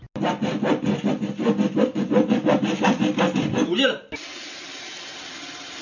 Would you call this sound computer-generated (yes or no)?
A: no